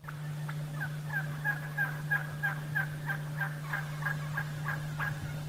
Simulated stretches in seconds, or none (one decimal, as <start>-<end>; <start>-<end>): none